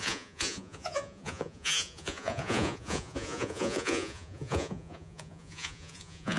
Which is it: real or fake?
fake